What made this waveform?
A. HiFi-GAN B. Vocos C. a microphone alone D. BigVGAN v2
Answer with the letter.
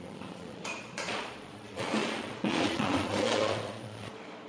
B